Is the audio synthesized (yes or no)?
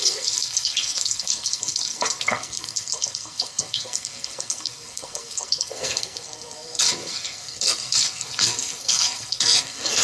yes